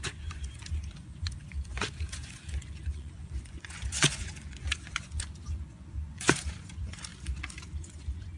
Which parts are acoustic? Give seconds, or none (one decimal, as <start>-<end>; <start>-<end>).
7.1-7.7

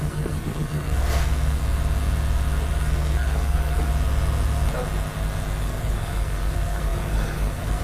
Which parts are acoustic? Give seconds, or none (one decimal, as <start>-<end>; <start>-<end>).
1.6-2.7; 3.9-5.6

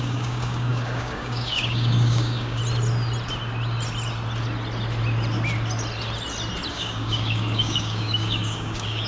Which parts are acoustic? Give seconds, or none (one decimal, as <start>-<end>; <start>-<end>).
2.6-6.7

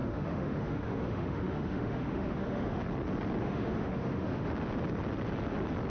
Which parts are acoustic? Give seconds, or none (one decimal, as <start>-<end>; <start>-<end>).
2.8-3.4; 4.5-5.9

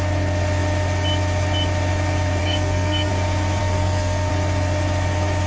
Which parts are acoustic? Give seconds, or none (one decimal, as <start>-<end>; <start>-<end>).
0.0-2.4; 3.1-3.6; 4.3-5.5